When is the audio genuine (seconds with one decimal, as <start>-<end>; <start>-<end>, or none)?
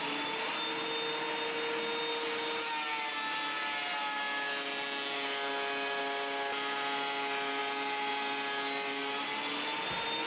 0.0-10.3